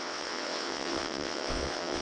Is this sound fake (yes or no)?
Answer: yes